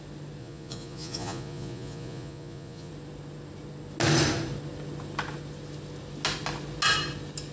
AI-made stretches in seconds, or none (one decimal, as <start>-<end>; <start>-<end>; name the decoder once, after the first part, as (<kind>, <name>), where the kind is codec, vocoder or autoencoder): 0.4-2.9 (vocoder, Vocos)